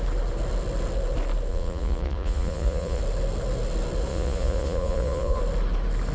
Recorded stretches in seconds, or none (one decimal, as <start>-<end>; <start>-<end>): 0.0-1.5; 3.0-4.1; 5.4-6.1